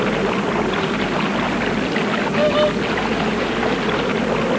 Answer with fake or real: real